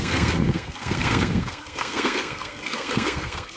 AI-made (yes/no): yes